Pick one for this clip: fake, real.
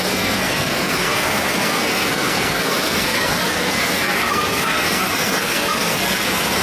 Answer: fake